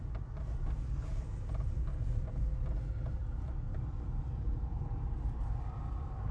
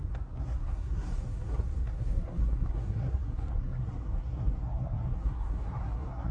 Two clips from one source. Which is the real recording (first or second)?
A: first